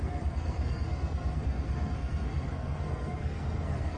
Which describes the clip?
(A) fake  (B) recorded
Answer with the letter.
A